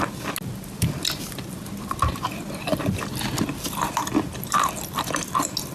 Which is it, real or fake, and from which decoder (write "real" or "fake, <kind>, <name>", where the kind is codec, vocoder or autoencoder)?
real